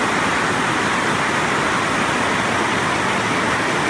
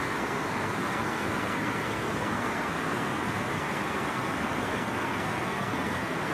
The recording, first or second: first